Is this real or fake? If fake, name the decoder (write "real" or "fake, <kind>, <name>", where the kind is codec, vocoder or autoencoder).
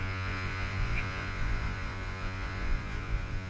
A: fake, vocoder, Vocos